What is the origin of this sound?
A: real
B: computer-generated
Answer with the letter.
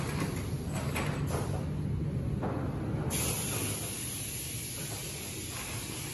A